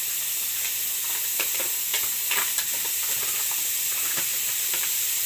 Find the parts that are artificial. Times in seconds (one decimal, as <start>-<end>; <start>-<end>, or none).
4.3-5.3